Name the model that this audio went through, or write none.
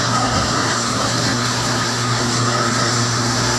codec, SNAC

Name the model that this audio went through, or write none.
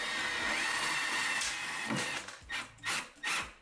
none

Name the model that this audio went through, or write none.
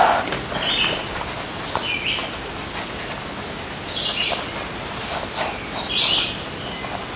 none